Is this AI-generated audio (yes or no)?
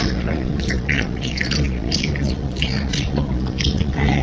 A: yes